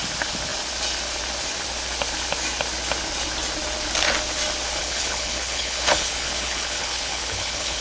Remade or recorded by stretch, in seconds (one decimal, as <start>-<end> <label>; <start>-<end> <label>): 0.0-4.8 recorded; 4.8-7.8 remade